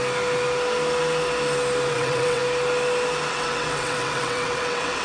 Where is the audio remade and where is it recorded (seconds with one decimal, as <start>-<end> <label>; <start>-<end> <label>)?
0.0-1.9 recorded; 1.9-2.4 remade; 2.4-3.3 recorded; 3.3-5.0 remade

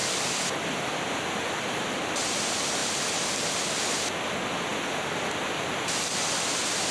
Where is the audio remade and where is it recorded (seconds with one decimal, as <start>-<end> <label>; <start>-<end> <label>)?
0.0-2.1 remade; 2.1-2.8 recorded; 2.8-3.6 remade; 3.6-6.9 recorded

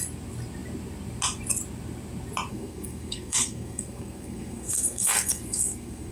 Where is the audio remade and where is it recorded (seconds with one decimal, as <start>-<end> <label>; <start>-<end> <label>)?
0.0-2.5 recorded; 2.5-6.1 remade

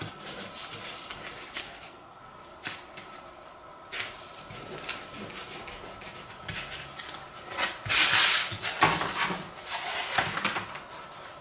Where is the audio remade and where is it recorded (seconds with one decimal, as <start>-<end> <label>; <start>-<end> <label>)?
0.0-1.6 recorded; 1.6-2.2 remade; 2.2-11.4 recorded

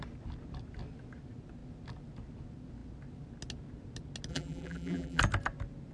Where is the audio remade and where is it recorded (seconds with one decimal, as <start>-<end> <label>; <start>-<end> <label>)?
0.0-4.3 recorded; 4.3-5.2 remade; 5.2-5.9 recorded

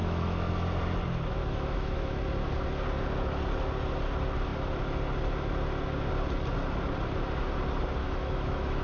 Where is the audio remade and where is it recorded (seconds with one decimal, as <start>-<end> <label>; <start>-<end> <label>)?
0.0-0.5 remade; 0.5-1.4 recorded; 1.4-2.2 remade; 2.2-8.0 recorded; 8.0-8.8 remade

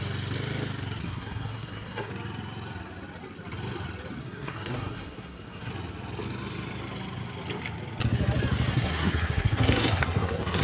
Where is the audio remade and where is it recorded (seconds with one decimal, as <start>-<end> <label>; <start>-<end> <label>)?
0.0-1.0 recorded; 1.0-2.1 remade; 2.1-4.2 recorded; 4.2-5.7 remade; 5.7-8.7 recorded; 8.7-10.6 remade

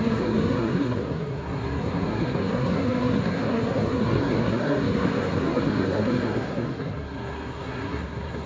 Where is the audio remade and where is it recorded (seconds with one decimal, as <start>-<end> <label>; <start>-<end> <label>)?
0.0-8.5 remade